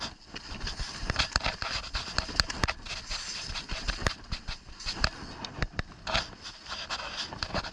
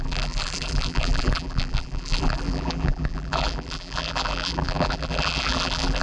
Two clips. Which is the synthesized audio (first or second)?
second